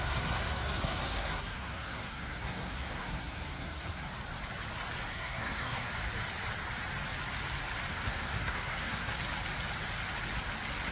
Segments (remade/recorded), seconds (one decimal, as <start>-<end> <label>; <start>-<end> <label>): 0.0-4.1 remade; 4.1-5.1 recorded; 5.1-5.9 remade; 5.9-7.9 recorded; 7.9-9.1 remade; 9.1-10.9 recorded

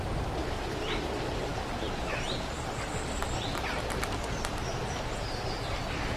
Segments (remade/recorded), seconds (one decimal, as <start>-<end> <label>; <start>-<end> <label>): 0.0-6.2 recorded

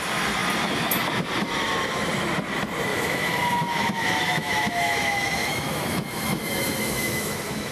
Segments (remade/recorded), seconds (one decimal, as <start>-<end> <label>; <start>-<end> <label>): 0.0-2.9 recorded; 2.9-7.7 remade

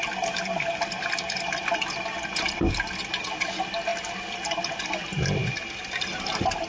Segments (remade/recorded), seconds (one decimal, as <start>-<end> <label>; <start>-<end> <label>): 0.0-6.7 recorded